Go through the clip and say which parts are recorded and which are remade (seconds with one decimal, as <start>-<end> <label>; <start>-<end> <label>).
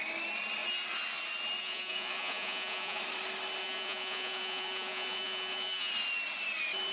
0.0-1.6 recorded; 1.6-3.0 remade; 3.0-3.6 recorded; 3.6-5.9 remade; 5.9-6.9 recorded